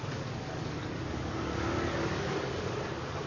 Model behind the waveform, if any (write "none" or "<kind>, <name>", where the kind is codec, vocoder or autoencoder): codec, DAC